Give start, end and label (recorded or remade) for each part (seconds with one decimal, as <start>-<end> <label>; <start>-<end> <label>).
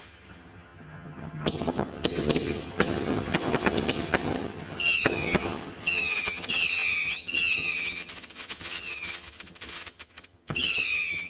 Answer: 0.0-11.3 remade